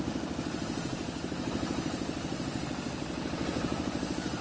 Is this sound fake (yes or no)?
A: yes